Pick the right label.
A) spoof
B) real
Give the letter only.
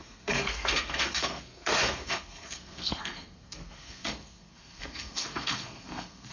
A